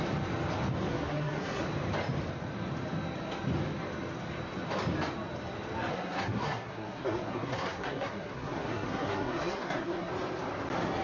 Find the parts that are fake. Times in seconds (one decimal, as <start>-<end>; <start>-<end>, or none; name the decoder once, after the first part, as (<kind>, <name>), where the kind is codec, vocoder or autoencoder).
0.9-1.6 (codec, SNAC); 5.9-10.1